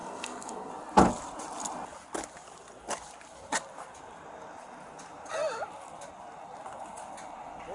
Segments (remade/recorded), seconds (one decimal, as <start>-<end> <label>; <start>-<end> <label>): 0.0-0.7 remade; 0.7-7.7 recorded